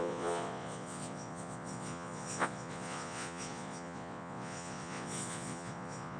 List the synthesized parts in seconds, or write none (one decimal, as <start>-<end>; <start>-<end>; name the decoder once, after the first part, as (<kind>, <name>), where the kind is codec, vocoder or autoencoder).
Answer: 0.0-6.2 (vocoder, Vocos)